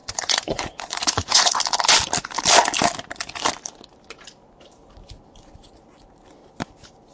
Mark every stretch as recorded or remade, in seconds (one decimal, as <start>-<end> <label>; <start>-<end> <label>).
0.0-1.6 remade; 1.6-7.1 recorded